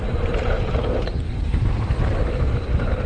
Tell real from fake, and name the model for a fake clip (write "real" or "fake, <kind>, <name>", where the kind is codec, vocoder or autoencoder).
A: fake, vocoder, BigVGAN v2